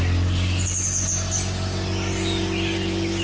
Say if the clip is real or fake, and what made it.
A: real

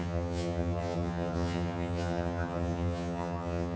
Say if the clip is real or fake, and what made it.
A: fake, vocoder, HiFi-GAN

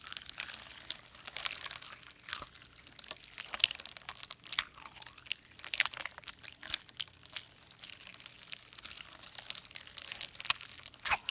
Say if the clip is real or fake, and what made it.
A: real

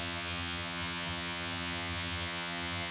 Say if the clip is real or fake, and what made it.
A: fake, vocoder, HiFi-GAN